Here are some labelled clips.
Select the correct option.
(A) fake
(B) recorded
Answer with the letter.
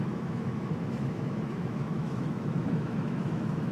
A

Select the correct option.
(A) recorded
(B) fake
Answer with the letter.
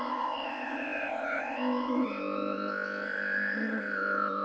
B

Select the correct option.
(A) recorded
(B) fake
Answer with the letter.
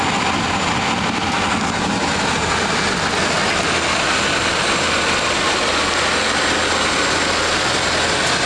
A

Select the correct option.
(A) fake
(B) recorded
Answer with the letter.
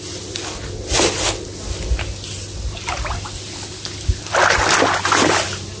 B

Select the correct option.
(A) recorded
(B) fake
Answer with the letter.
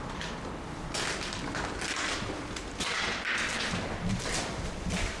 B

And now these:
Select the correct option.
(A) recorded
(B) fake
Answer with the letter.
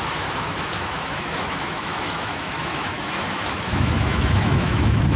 B